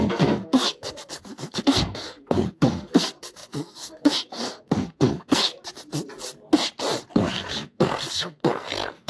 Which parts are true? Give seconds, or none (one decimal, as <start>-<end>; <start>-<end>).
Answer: 5.5-7.1